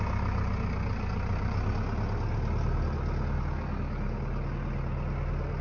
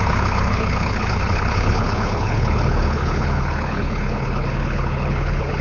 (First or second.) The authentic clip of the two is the first